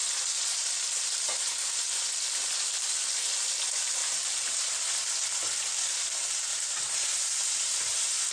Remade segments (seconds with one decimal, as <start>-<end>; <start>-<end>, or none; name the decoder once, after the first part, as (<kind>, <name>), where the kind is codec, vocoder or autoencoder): 4.0-4.6 (vocoder, BigVGAN v2)

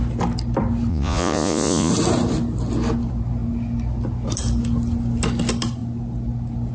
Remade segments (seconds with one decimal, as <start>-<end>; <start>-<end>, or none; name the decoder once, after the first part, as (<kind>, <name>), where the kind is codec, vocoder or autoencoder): 0.9-1.9 (vocoder, Vocos)

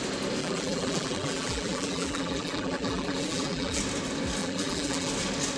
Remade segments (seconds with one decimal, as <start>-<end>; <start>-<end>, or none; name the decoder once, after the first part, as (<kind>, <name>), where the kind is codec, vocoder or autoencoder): 0.4-3.8 (vocoder, BigVGAN v2); 4.4-5.1

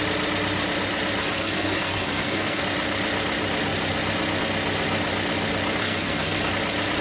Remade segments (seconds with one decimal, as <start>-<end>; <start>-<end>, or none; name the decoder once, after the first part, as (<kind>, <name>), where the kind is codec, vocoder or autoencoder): 1.2-2.6 (codec, SNAC); 5.8-6.5